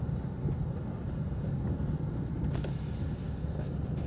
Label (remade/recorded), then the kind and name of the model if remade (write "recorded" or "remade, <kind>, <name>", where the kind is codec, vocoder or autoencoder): recorded